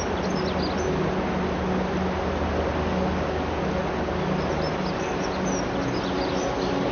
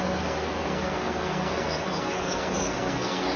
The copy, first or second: second